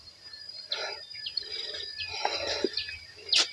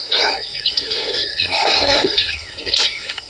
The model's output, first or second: second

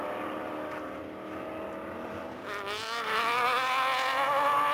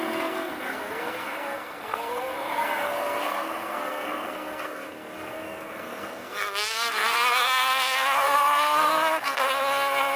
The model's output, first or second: second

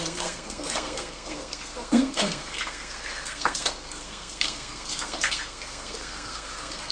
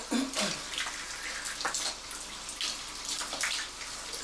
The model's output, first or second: first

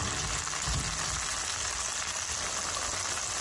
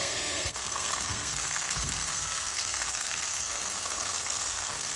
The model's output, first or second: second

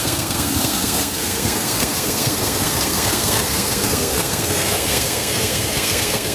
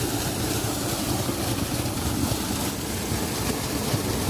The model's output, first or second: first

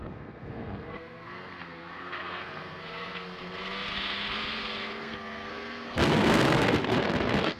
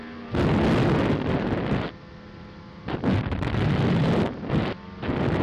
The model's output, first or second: first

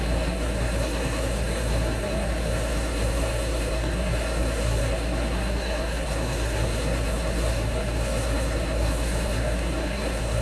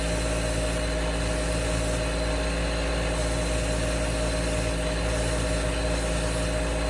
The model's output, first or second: first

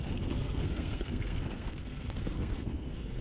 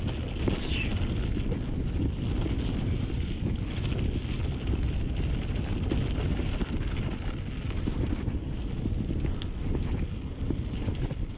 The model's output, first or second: first